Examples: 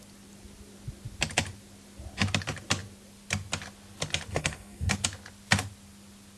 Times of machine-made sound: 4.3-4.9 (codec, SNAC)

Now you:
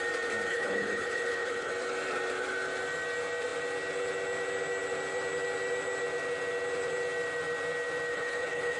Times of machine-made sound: 0.5-1.7 (codec, HILCodec); 8.1-8.8

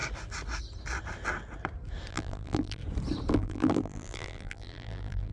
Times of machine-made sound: 2.1-2.8 (vocoder, BigVGAN v2); 3.3-5.3

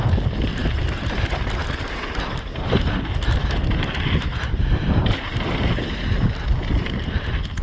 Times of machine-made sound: 1.6-2.2 (vocoder, BigVGAN v2)

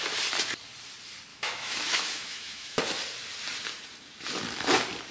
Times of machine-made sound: 1.3-2.8 (autoencoder, DAC-VAE)

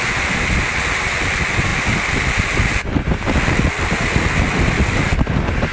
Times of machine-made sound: none